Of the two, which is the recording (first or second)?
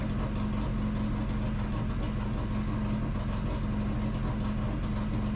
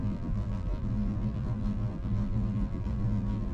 first